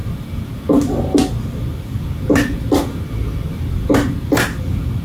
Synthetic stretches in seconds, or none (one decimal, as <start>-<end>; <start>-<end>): none